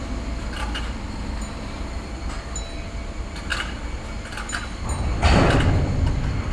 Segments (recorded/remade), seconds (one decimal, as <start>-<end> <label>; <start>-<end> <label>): 0.0-6.5 recorded